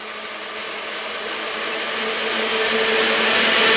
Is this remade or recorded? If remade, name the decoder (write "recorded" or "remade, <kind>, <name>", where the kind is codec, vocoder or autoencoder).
recorded